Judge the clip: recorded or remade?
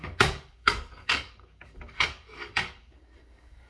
remade